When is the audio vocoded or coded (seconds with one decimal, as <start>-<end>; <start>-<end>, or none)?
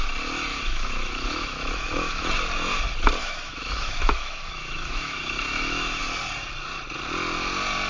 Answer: 0.5-2.3; 3.2-6.0